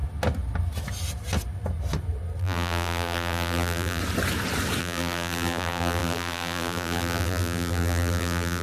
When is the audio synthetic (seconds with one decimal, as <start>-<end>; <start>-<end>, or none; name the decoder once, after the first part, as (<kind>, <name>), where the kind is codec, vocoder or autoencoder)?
2.4-4.0 (vocoder, BigVGAN v2); 4.8-8.6